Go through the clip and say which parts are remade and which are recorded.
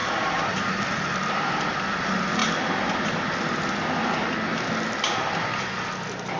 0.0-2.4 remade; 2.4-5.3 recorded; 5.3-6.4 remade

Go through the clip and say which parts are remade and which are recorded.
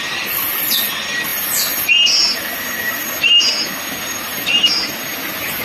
0.0-5.6 recorded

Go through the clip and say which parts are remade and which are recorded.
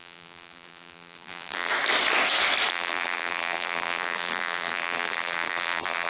0.0-1.7 remade; 1.7-2.7 recorded; 2.7-6.1 remade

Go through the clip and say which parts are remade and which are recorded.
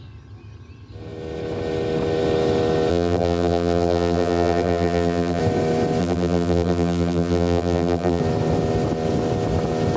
0.0-2.9 recorded; 2.9-5.4 remade; 5.4-6.0 recorded; 6.0-8.2 remade; 8.2-10.0 recorded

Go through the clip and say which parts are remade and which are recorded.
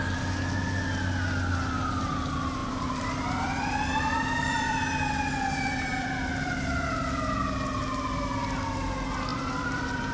0.0-2.6 recorded; 2.6-6.9 remade; 6.9-9.3 recorded; 9.3-10.1 remade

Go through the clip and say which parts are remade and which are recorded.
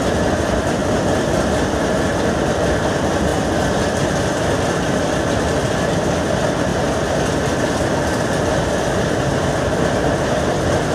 0.0-0.8 recorded; 0.8-2.5 remade; 2.5-3.3 recorded; 3.3-5.5 remade; 5.5-10.9 recorded